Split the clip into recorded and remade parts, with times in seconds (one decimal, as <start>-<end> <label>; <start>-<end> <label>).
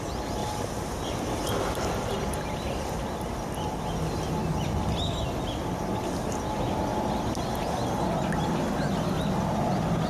0.0-10.1 recorded